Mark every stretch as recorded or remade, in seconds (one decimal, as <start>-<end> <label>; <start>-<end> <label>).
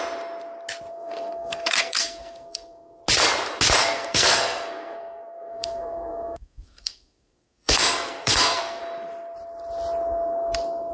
0.0-0.9 recorded; 0.9-3.0 remade; 3.0-3.8 recorded; 3.8-8.8 remade; 8.8-10.9 recorded